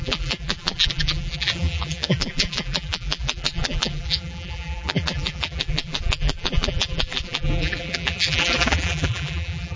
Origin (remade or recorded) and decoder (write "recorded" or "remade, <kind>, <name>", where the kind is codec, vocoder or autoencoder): remade, vocoder, BigVGAN v2